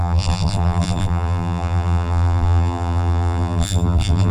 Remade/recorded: remade